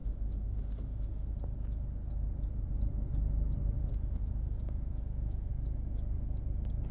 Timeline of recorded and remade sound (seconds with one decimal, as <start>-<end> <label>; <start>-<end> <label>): 0.0-1.3 remade; 1.3-3.8 recorded; 3.8-5.5 remade; 5.5-6.9 recorded